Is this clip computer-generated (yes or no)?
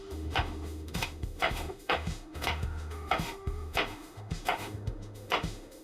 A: yes